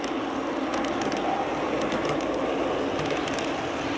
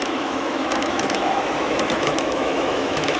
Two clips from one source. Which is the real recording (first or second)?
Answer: first